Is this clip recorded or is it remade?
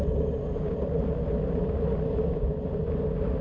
recorded